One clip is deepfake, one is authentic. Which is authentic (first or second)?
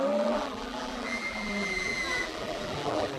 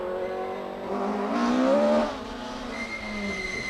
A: second